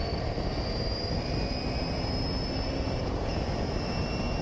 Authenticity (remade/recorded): recorded